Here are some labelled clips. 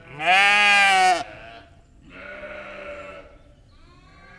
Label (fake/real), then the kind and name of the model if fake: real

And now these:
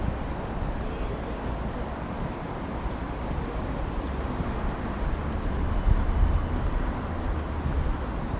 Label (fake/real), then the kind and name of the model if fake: real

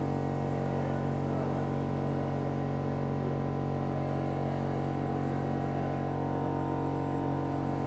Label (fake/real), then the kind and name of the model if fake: real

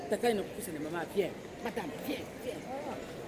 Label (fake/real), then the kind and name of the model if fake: real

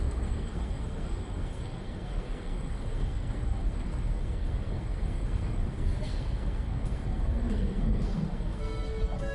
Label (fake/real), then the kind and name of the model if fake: fake, codec, SNAC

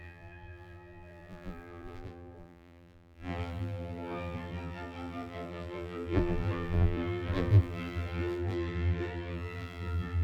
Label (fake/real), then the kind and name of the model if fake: fake, vocoder, BigVGAN v2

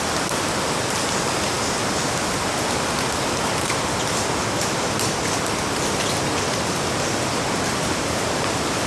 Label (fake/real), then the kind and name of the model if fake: real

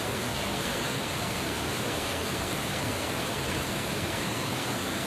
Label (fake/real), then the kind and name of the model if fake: fake, codec, SNAC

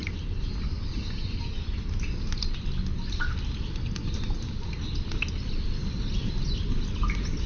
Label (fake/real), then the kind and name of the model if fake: real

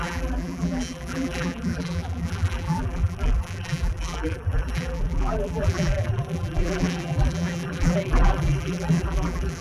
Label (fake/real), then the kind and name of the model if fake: fake, vocoder, BigVGAN v2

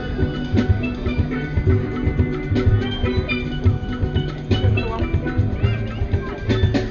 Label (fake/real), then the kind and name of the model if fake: real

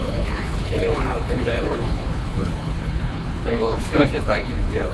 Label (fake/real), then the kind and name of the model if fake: fake, codec, HILCodec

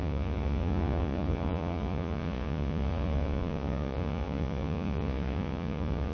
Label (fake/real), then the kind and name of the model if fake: fake, vocoder, Vocos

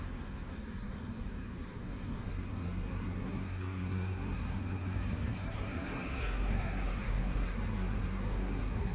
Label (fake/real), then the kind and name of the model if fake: fake, codec, SNAC